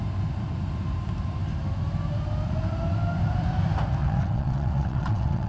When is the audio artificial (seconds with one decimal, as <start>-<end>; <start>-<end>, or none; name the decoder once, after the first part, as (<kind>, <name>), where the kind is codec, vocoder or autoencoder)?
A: 4.0-5.5 (vocoder, WaveNeXt)